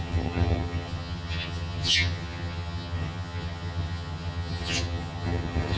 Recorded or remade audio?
remade